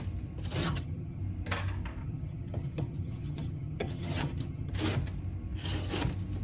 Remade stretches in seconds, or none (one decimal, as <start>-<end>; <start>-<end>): 0.6-1.2; 2.0-4.7